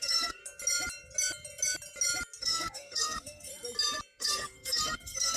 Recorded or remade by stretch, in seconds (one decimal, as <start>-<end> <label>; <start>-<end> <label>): 0.0-0.4 remade; 0.4-2.4 recorded; 2.4-3.5 remade; 3.5-4.2 recorded; 4.2-5.4 remade